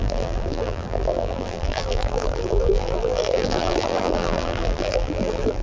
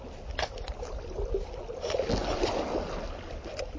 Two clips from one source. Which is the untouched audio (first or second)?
second